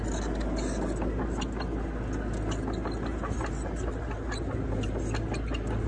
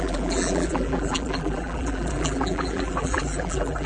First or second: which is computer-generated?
second